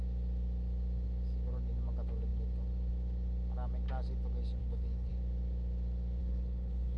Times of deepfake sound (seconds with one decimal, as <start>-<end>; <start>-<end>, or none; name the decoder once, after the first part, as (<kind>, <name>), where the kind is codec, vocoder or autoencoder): 4.6-5.1 (codec, HILCodec); 6.2-7.0